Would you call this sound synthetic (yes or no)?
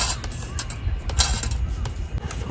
no